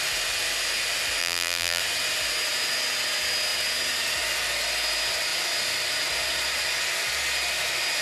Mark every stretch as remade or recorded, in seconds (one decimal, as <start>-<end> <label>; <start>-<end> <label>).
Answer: 0.0-1.2 recorded; 1.2-1.8 remade; 1.8-8.0 recorded